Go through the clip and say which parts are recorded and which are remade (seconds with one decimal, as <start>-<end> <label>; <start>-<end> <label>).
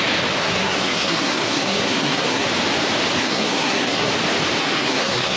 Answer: 0.0-0.4 recorded; 0.4-2.5 remade; 2.5-3.2 recorded; 3.2-4.1 remade; 4.1-4.6 recorded; 4.6-5.4 remade